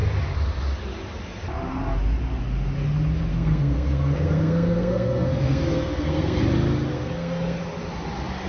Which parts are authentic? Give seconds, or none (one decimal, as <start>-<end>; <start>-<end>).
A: 0.0-3.3; 6.4-6.9; 7.6-8.5